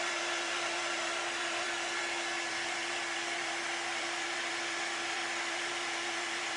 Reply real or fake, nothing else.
fake